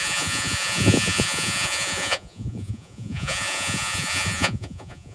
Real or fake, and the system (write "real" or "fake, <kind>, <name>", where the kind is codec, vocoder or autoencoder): fake, vocoder, Vocos